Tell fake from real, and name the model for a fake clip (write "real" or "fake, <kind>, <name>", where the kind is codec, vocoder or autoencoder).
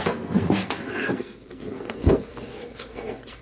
fake, codec, SNAC